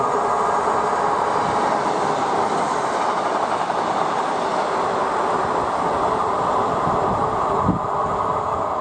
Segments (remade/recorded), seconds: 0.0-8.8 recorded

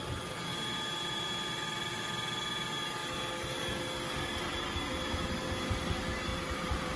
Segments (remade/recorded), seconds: 0.0-6.3 recorded; 6.3-7.0 remade